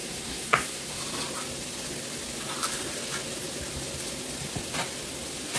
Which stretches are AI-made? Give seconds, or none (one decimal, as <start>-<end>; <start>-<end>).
0.0-1.0

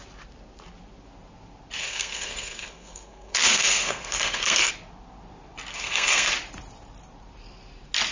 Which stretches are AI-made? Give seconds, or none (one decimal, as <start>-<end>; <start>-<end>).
1.8-4.7; 5.7-6.3

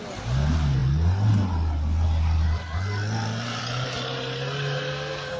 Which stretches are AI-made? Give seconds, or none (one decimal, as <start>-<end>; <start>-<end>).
4.9-5.4